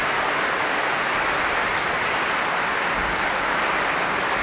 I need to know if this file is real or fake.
real